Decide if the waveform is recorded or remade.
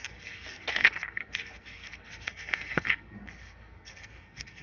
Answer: remade